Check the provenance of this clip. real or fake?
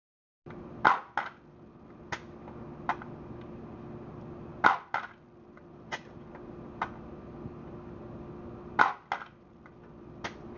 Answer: real